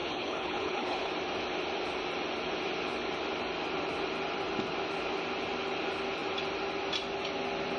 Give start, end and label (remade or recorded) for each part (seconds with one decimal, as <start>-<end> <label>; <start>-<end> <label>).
0.0-1.1 remade; 1.1-7.8 recorded